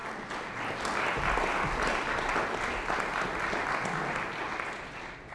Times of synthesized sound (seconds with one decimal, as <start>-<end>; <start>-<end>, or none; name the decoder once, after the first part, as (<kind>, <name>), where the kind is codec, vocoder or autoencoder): none